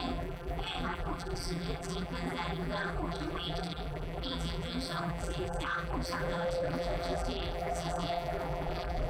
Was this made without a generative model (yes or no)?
no